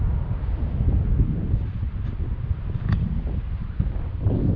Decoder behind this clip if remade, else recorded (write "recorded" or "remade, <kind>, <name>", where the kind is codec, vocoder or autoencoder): recorded